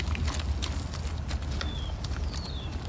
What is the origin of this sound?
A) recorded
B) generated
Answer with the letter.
A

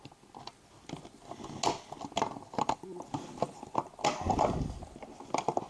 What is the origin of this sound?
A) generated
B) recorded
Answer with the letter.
B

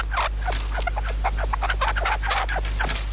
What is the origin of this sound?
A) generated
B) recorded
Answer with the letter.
B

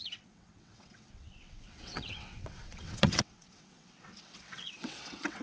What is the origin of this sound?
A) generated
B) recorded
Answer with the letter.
A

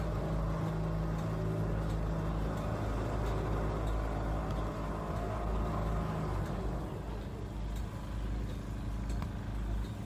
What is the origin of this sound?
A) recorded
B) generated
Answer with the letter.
A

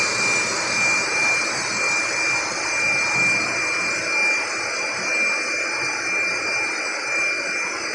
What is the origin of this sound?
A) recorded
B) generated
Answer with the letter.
A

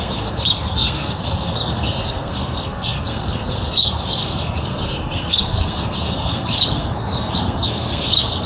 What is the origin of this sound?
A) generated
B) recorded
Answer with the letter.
A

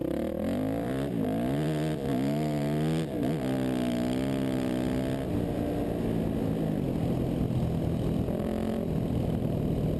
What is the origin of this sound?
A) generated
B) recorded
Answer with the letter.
B